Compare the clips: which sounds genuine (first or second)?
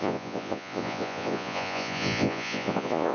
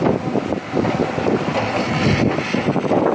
second